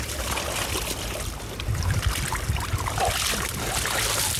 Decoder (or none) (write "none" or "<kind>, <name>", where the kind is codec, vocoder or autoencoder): none